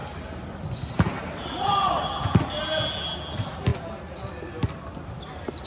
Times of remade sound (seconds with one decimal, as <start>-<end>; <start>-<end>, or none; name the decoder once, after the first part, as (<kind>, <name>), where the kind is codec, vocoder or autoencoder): none